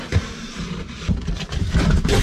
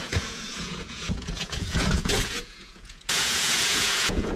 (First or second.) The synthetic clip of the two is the second